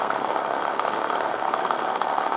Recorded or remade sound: remade